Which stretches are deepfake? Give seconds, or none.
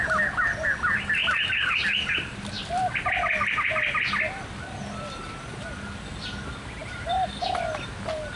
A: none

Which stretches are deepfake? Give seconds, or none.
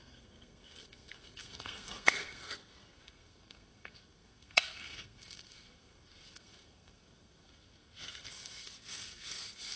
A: 0.0-9.8 (codec, SNAC)